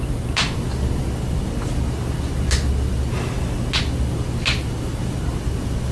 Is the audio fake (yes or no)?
no